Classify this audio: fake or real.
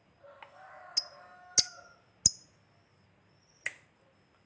real